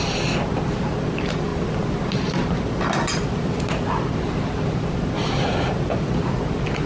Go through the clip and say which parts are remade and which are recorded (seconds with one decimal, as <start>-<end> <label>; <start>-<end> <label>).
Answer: 0.0-6.9 recorded